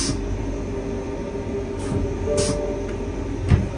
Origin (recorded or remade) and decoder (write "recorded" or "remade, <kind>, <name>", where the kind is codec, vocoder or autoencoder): recorded